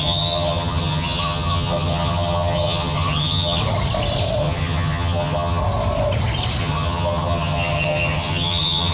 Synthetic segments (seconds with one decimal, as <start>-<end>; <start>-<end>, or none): 0.0-3.6; 4.4-5.6; 6.6-8.9